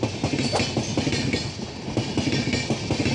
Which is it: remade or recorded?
recorded